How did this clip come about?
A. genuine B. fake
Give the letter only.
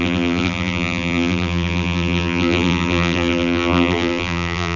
B